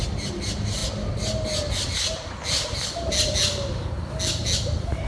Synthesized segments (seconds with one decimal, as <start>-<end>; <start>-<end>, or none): none